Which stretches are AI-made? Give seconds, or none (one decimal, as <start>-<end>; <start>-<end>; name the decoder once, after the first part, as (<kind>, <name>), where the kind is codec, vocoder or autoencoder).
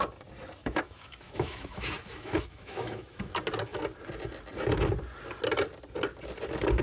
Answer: 0.6-3.3 (autoencoder, DAC-VAE)